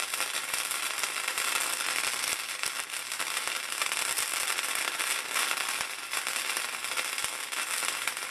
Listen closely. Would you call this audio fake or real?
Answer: fake